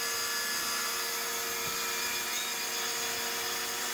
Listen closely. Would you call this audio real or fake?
real